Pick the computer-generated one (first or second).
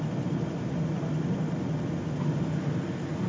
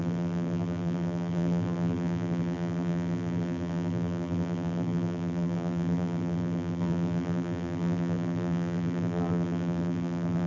second